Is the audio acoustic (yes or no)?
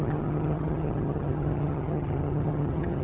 no